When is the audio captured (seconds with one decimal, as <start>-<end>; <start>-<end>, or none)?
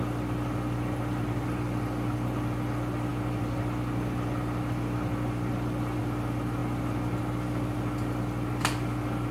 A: 0.0-9.3